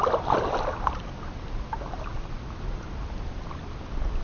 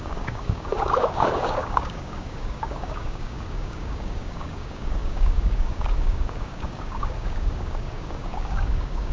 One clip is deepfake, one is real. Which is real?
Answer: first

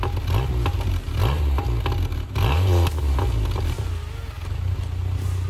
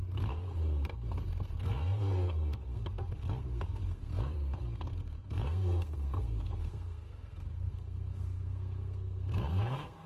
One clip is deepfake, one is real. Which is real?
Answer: first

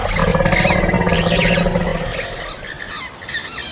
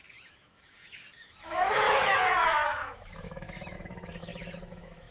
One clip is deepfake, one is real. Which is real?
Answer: first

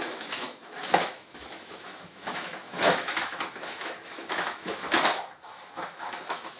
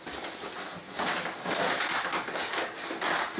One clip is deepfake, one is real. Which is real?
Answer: second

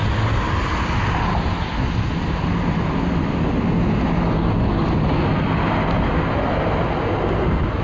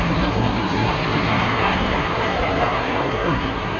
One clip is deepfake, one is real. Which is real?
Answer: first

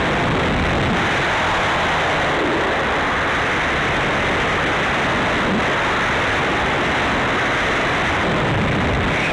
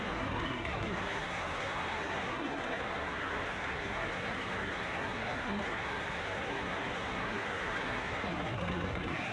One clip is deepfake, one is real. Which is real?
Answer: first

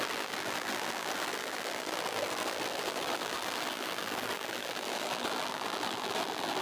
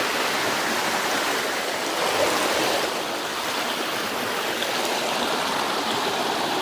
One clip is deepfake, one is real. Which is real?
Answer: second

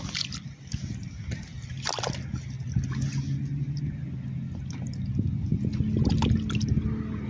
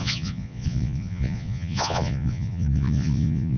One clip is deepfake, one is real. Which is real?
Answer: first